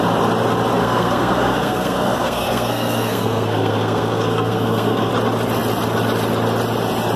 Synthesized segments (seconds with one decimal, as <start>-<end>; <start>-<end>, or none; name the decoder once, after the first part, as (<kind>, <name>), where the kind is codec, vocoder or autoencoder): 0.8-5.1 (codec, SNAC)